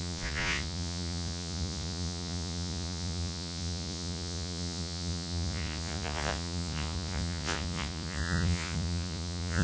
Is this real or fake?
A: fake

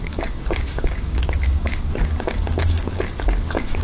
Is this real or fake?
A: fake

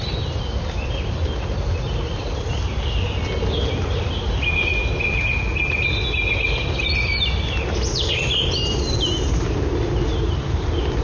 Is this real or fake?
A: real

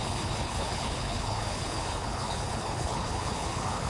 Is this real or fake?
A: fake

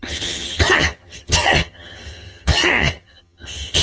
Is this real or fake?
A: fake